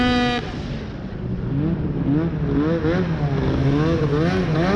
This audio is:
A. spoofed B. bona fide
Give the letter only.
B